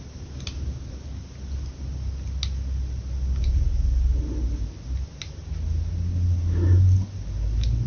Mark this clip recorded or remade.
recorded